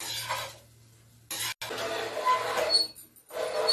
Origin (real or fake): real